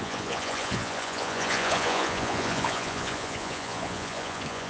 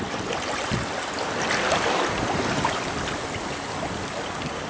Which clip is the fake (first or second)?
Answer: first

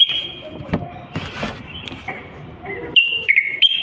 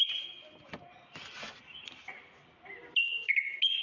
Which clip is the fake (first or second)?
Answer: first